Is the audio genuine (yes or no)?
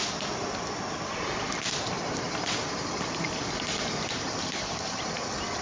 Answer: yes